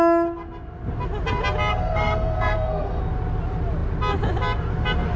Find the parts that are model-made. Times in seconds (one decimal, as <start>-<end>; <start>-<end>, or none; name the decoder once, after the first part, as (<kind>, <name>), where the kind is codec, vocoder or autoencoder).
1.7-3.0 (codec, SNAC)